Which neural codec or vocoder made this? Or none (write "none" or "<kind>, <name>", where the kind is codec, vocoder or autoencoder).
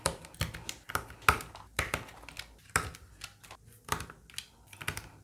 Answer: none